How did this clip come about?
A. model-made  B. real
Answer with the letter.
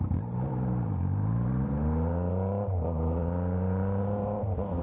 A